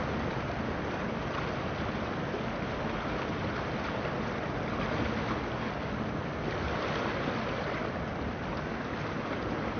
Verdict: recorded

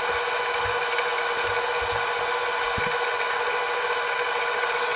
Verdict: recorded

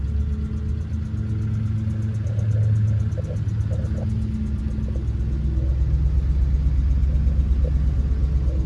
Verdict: recorded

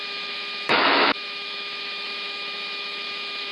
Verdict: remade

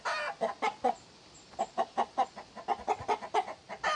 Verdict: recorded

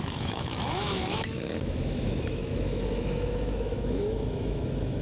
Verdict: remade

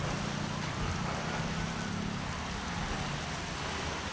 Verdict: recorded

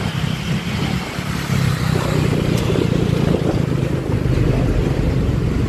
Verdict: recorded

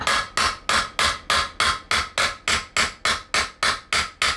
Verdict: recorded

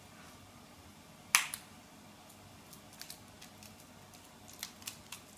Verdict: recorded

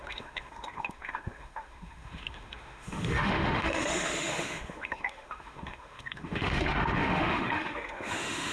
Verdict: remade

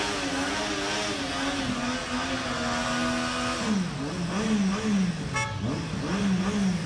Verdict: recorded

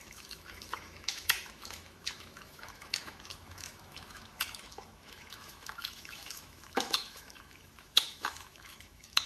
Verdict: remade